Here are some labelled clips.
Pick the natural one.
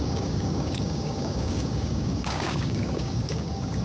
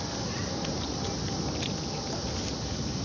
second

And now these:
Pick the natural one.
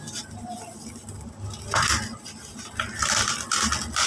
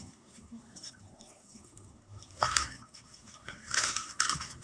first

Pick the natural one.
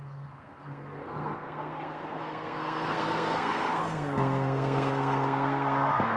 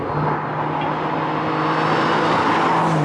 second